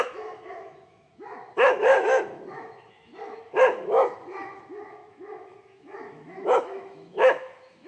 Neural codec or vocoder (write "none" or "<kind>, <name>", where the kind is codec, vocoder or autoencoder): autoencoder, DAC-VAE